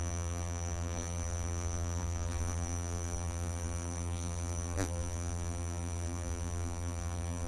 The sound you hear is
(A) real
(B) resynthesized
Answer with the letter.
B